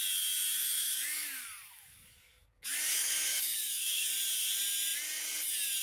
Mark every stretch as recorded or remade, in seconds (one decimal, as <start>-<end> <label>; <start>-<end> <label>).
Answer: 0.0-0.6 recorded; 0.6-4.1 remade; 4.1-5.8 recorded